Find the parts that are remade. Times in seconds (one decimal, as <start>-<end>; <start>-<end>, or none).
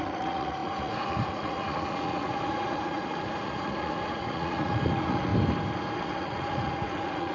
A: 0.0-5.3; 6.0-7.3